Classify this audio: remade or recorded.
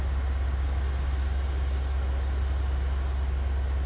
recorded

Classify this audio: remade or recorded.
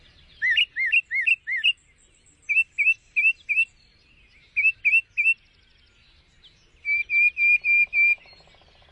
recorded